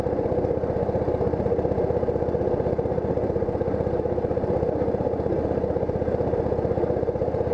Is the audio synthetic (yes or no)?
no